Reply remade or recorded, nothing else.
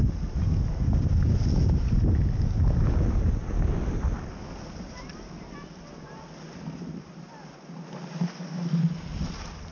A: recorded